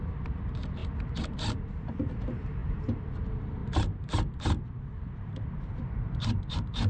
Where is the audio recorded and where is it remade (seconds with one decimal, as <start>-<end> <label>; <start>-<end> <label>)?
0.0-6.9 remade